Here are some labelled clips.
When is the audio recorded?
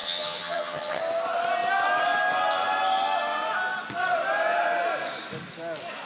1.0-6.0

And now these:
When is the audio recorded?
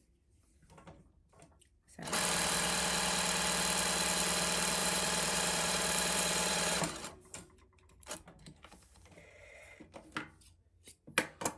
0.0-4.8; 9.8-11.6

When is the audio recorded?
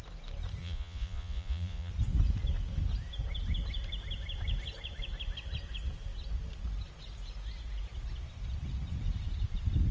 0.0-0.6; 1.9-9.9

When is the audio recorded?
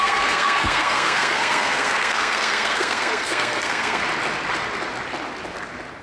4.0-6.0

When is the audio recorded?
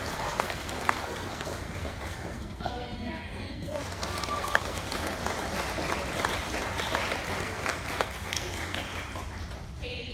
5.2-7.4; 8.9-10.1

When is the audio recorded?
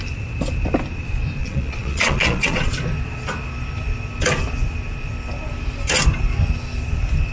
0.0-1.4; 2.7-7.3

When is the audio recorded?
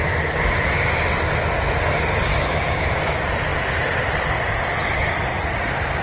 0.0-2.3; 3.0-6.0